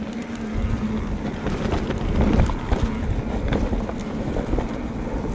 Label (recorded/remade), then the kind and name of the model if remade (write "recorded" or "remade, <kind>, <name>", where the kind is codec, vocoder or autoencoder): recorded